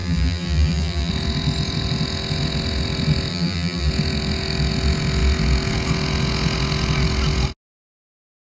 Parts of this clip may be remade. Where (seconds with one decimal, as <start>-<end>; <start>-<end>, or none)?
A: 0.0-1.1; 3.3-3.9